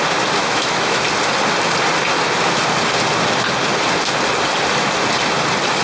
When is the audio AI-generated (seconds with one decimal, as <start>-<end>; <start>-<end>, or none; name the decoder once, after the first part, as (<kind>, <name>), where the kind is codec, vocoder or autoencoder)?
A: 0.4-1.0 (autoencoder, DAC-VAE)